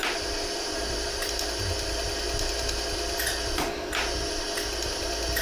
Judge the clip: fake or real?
real